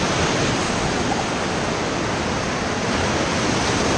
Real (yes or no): yes